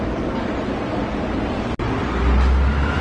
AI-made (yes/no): no